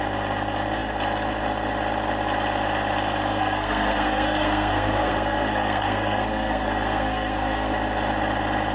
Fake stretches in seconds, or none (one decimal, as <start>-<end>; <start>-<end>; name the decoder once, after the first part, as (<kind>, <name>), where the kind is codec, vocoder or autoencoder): 3.3-7.7 (codec, SNAC)